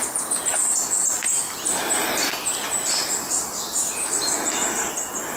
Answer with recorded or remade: recorded